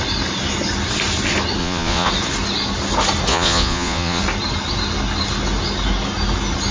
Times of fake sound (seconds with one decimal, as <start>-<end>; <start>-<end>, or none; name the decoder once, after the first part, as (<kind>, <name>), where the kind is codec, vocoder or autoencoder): 1.6-2.1 (vocoder, Vocos); 3.3-4.2